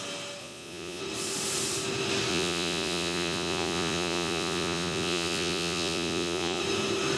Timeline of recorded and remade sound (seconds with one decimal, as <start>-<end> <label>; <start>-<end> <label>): 0.0-0.4 recorded; 0.4-1.0 remade; 1.0-2.3 recorded; 2.3-6.6 remade; 6.6-7.2 recorded